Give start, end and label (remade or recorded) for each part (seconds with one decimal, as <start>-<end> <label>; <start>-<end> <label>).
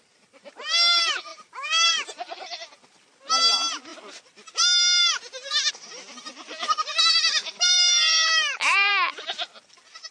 0.0-1.3 recorded; 1.3-2.4 remade; 2.4-6.3 recorded; 6.3-8.9 remade; 8.9-10.1 recorded